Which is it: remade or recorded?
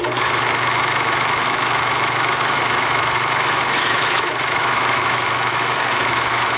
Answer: remade